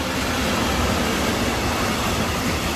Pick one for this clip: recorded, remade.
recorded